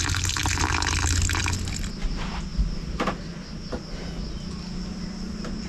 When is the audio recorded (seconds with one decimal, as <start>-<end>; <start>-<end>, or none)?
0.0-5.7